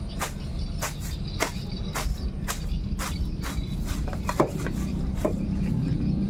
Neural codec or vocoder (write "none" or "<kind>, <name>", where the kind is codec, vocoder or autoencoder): none